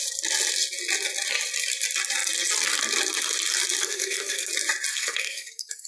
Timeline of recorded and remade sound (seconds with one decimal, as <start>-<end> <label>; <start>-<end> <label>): 0.0-3.8 recorded; 3.8-4.5 remade; 4.5-4.9 recorded; 4.9-5.9 remade